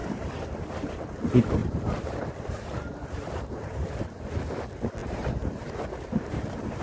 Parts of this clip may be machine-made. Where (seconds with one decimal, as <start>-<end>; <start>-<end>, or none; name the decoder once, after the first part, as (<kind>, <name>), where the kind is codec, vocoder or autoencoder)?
0.0-0.9 (vocoder, BigVGAN v2); 1.6-4.2; 5.0-5.8